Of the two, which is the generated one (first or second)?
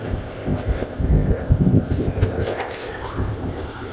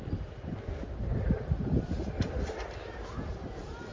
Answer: first